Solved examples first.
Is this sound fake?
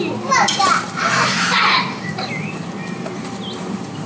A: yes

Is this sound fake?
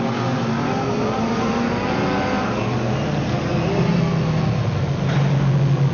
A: no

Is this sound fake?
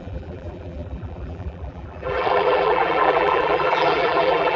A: yes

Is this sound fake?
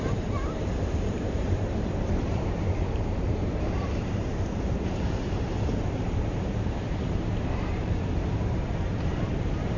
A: yes